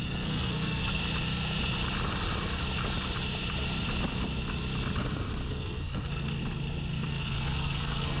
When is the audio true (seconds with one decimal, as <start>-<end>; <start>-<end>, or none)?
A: 1.0-5.5; 6.4-7.1

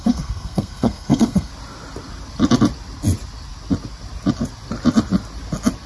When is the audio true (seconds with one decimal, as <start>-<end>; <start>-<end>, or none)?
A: 1.5-5.9

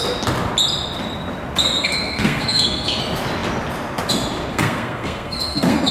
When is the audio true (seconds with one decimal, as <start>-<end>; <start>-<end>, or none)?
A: 0.0-1.6; 3.0-4.5

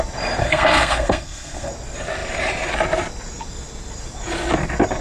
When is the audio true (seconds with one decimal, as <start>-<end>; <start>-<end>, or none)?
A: 0.0-0.4; 1.7-5.0

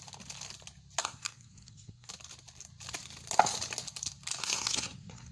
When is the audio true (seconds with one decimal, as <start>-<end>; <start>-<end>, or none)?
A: 0.0-1.0; 2.1-4.4